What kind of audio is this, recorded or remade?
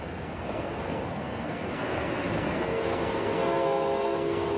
remade